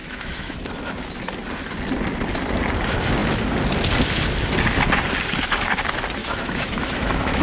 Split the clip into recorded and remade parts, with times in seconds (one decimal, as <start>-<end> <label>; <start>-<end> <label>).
0.0-0.6 remade; 0.6-6.2 recorded; 6.2-7.4 remade